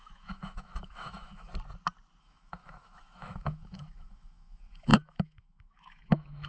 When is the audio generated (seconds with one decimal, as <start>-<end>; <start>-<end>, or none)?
0.0-1.5; 2.2-6.5